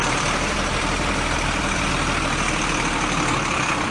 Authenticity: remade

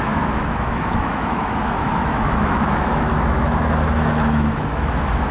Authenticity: remade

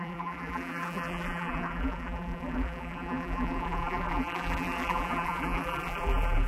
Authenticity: remade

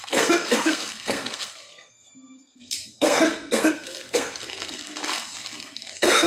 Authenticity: remade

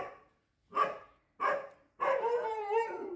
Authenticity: recorded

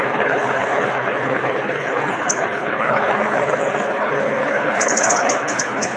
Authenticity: remade